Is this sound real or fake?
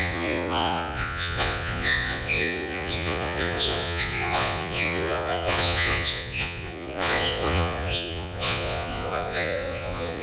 fake